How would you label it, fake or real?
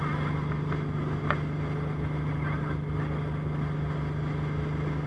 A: real